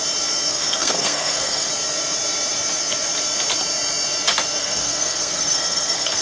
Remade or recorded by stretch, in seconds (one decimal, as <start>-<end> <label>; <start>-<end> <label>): 0.0-0.5 recorded; 0.5-1.7 remade; 1.7-4.6 recorded; 4.6-6.2 remade